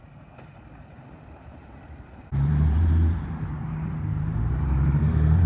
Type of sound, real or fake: fake